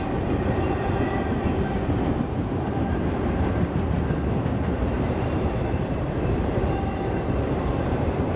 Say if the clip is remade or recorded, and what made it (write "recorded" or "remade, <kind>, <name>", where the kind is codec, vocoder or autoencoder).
remade, vocoder, BigVGAN v2